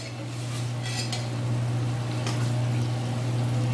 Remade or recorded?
recorded